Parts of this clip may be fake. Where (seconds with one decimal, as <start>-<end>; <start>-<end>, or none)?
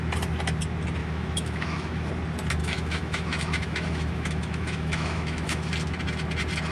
1.0-2.1; 2.6-5.7